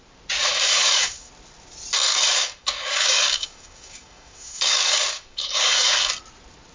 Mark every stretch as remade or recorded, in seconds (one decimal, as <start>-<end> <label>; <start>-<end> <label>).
0.0-0.7 recorded; 0.7-1.3 remade; 1.3-2.1 recorded; 2.1-6.1 remade; 6.1-6.7 recorded